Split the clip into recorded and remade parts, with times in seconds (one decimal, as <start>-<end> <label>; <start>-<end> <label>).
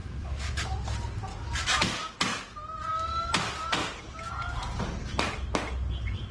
0.0-0.7 remade; 0.7-1.3 recorded; 1.3-2.1 remade; 2.1-6.3 recorded